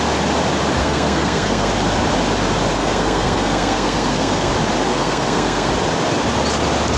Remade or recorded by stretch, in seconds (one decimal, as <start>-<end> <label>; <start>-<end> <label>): 0.0-0.8 recorded; 0.8-1.7 remade; 1.7-2.8 recorded; 2.8-4.5 remade; 4.5-4.9 recorded; 4.9-5.7 remade; 5.7-7.0 recorded